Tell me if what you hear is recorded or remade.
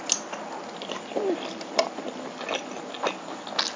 recorded